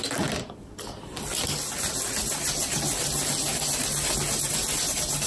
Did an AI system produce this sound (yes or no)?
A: no